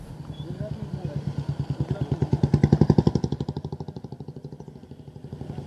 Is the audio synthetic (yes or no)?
no